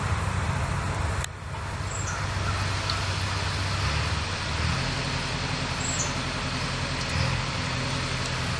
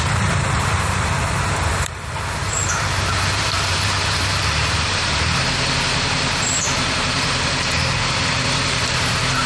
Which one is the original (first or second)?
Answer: first